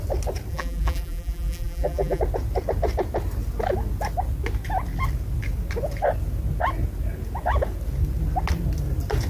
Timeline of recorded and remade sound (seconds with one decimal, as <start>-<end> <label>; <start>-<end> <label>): 0.0-0.5 recorded; 0.5-2.2 remade; 2.2-9.3 recorded